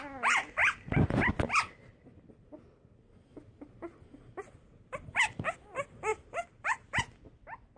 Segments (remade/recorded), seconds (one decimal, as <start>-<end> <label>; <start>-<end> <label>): 0.0-0.6 recorded; 0.6-1.3 remade; 1.3-6.1 recorded; 6.1-7.0 remade; 7.0-7.8 recorded